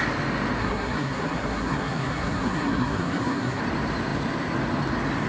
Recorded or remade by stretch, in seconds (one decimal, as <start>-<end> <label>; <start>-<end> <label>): 0.0-0.6 recorded; 0.6-3.6 remade; 3.6-5.3 recorded